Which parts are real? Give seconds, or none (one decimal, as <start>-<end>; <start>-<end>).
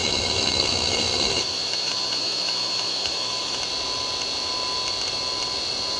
3.6-6.0